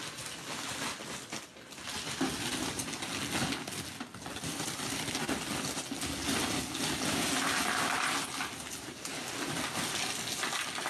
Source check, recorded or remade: recorded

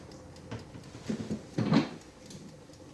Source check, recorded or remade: recorded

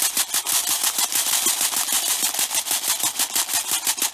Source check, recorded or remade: recorded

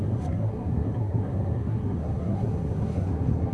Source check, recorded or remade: remade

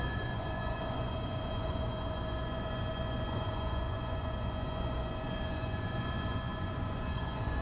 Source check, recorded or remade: remade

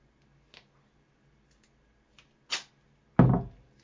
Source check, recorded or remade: recorded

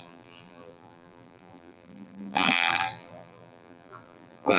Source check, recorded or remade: remade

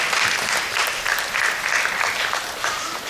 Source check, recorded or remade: recorded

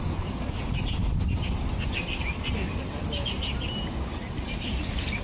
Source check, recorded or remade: recorded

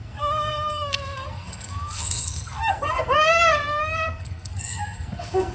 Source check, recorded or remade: remade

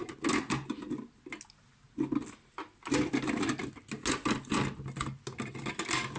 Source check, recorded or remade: recorded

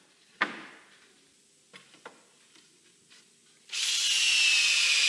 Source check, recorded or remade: recorded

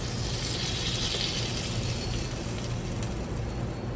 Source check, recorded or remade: recorded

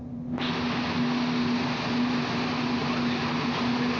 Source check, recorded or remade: recorded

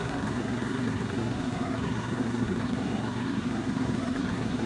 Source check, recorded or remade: remade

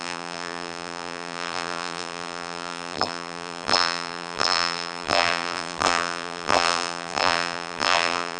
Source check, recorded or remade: remade